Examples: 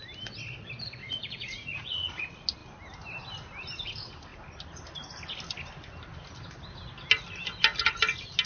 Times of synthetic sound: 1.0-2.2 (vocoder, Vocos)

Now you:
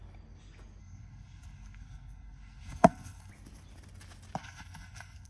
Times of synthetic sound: 0.8-3.3 (codec, SNAC); 4.4-5.3

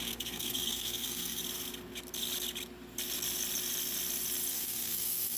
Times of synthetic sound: 0.0-1.4 (codec, SNAC); 4.5-5.4